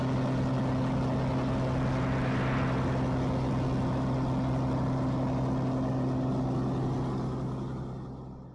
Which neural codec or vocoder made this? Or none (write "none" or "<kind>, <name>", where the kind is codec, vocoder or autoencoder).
none